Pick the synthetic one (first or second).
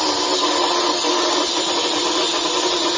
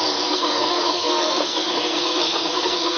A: second